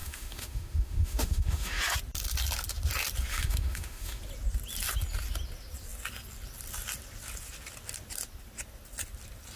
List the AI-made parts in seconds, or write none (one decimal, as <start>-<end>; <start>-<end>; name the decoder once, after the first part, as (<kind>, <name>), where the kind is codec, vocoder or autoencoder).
0.0-1.8 (autoencoder, DAC-VAE); 3.3-4.2